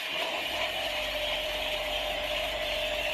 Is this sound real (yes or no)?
no